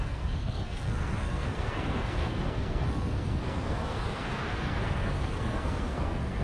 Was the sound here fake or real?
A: fake